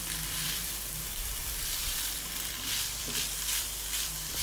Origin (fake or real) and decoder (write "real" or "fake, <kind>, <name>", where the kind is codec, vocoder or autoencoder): fake, vocoder, BigVGAN v2